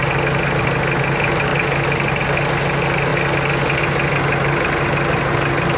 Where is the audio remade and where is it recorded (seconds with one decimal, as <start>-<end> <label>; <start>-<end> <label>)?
0.0-5.8 recorded